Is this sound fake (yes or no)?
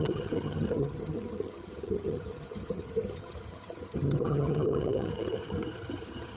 yes